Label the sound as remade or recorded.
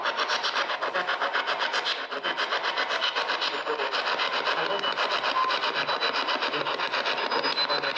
recorded